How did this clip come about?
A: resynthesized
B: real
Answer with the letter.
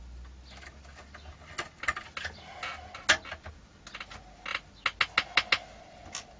B